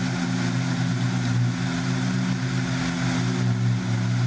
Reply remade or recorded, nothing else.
recorded